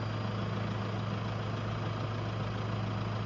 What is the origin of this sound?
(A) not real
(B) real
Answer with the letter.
B